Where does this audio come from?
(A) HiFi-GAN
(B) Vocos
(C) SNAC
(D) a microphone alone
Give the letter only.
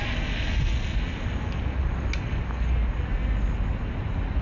D